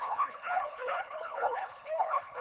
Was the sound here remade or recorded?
remade